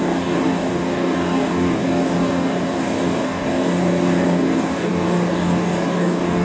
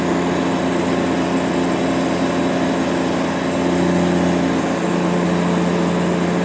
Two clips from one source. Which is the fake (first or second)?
first